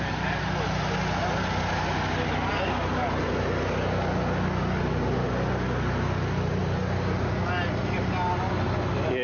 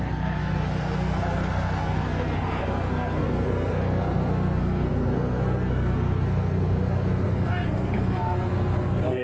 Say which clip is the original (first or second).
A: first